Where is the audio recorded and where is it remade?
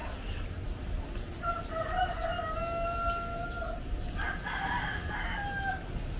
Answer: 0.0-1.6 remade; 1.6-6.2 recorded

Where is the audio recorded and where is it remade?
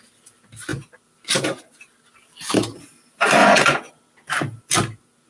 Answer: 0.0-3.4 recorded; 3.4-3.9 remade; 3.9-5.3 recorded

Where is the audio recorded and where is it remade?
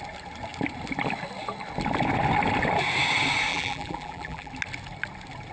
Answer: 0.0-3.5 recorded; 3.5-4.5 remade; 4.5-5.5 recorded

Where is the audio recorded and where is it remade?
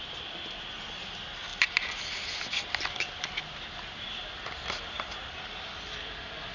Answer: 0.0-6.5 recorded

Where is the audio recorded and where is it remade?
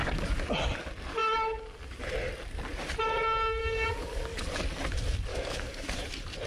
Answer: 0.0-0.5 remade; 0.5-3.6 recorded; 3.6-4.6 remade; 4.6-5.3 recorded; 5.3-6.0 remade; 6.0-6.5 recorded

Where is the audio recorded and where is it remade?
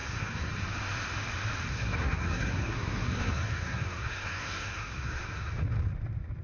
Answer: 0.0-0.5 remade; 0.5-1.7 recorded; 1.7-5.5 remade; 5.5-6.4 recorded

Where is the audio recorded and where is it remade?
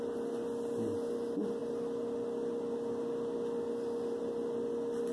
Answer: 0.0-5.1 recorded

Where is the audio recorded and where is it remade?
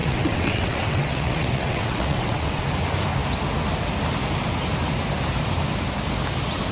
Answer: 0.0-2.6 remade; 2.6-6.7 recorded